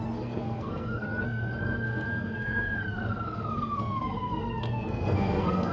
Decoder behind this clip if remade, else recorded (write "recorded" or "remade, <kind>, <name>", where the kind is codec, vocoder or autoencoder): remade, codec, SNAC